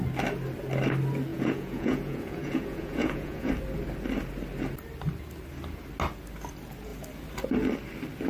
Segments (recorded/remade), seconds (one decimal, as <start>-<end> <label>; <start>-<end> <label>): 0.0-1.3 recorded; 1.3-3.5 remade; 3.5-8.3 recorded

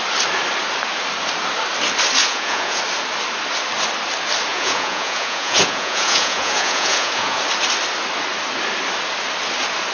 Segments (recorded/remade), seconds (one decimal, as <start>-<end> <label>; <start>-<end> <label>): 0.0-2.2 recorded; 2.2-2.8 remade; 2.8-4.5 recorded; 4.5-7.4 remade; 7.4-9.9 recorded

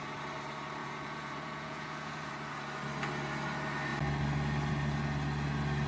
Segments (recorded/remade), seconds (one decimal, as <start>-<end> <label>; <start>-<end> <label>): 0.0-0.8 recorded; 0.8-2.3 remade; 2.3-5.9 recorded

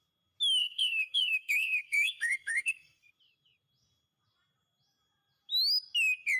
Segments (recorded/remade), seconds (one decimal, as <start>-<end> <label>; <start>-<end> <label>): 0.0-0.6 recorded; 0.6-3.1 remade; 3.1-6.4 recorded